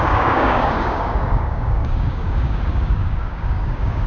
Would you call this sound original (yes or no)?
no